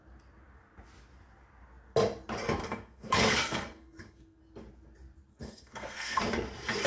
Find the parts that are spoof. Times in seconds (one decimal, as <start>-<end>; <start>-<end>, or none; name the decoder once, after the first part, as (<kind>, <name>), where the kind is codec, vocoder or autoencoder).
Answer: 2.6-4.4 (codec, SNAC); 5.3-6.2